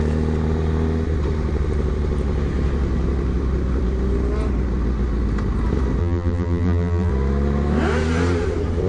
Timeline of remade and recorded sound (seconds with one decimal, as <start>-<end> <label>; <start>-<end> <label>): 0.0-6.0 recorded; 6.0-7.1 remade; 7.1-8.9 recorded